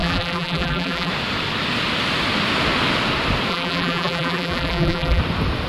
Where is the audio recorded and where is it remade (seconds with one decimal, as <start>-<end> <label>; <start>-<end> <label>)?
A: 0.0-1.1 remade; 1.1-3.5 recorded; 3.5-5.2 remade; 5.2-5.7 recorded